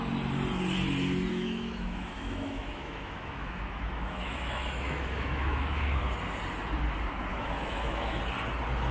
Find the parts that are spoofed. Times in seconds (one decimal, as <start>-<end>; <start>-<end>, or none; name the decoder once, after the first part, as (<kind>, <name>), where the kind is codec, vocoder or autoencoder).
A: 1.3-6.0 (autoencoder, DAC-VAE); 7.3-8.2